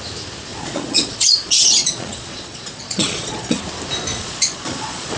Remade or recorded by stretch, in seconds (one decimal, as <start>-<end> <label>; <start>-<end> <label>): 0.0-0.5 recorded; 0.5-3.6 remade; 3.6-4.1 recorded; 4.1-5.2 remade